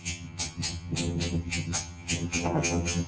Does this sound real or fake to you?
fake